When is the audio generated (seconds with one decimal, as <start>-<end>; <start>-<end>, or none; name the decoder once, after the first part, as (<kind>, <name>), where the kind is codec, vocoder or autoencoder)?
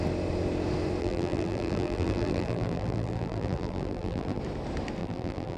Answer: 1.0-4.4 (vocoder, BigVGAN v2); 5.0-5.6